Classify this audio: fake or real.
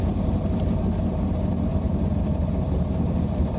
real